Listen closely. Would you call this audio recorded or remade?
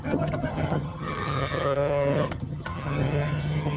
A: remade